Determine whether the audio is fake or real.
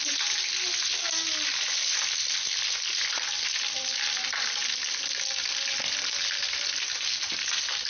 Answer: real